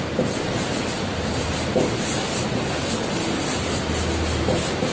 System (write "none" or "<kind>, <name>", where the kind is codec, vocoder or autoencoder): none